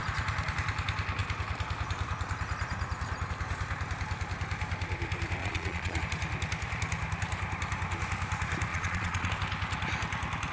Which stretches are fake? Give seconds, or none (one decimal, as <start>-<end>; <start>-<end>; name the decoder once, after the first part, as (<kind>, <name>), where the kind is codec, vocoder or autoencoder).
5.4-6.0 (vocoder, Vocos); 8.7-9.3